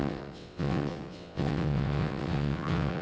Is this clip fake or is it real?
fake